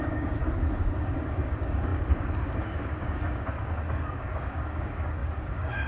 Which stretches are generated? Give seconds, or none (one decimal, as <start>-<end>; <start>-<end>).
0.0-0.4; 1.0-5.9